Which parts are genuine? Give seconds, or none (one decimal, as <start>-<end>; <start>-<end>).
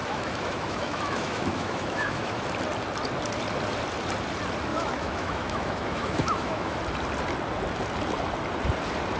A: 2.4-4.7; 6.8-9.2